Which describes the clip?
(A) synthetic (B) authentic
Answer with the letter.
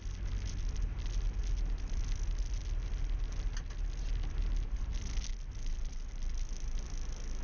B